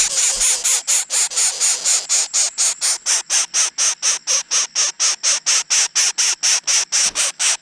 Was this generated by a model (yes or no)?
no